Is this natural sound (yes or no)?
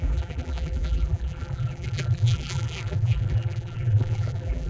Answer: no